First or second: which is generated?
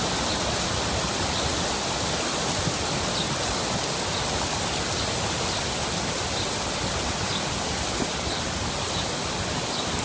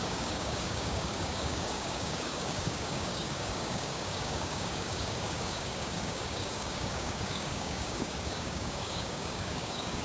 second